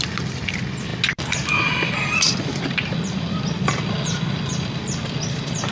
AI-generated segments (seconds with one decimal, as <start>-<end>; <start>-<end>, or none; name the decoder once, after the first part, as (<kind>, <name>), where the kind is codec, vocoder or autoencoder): none